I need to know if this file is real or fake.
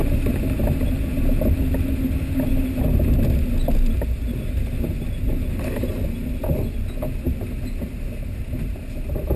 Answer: real